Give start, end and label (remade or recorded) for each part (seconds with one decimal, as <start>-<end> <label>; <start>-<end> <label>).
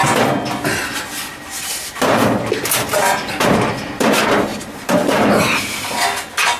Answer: 0.0-4.5 recorded; 4.5-5.9 remade; 5.9-6.6 recorded